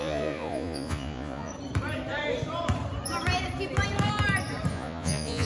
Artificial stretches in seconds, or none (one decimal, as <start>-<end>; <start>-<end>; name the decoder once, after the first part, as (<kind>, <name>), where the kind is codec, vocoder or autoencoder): 0.0-1.5 (vocoder, Vocos); 4.7-5.4